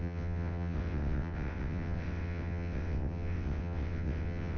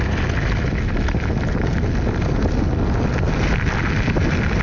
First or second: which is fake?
first